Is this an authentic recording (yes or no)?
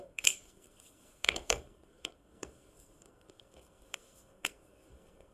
no